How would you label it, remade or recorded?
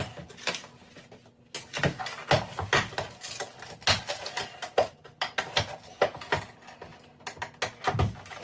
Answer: recorded